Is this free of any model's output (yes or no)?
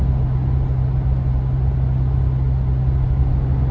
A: yes